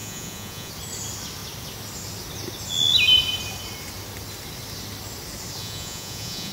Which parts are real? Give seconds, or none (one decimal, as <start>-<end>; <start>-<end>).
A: 0.7-5.6